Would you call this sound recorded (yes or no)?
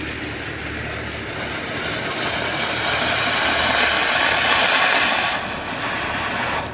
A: yes